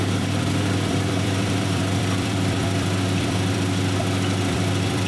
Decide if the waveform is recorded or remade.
remade